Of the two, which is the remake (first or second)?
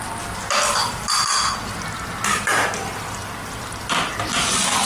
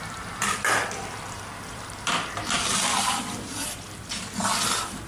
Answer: second